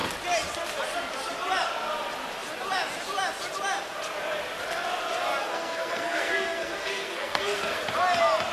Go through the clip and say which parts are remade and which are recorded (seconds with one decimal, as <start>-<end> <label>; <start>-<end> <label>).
0.0-5.4 recorded; 5.4-7.8 remade; 7.8-8.5 recorded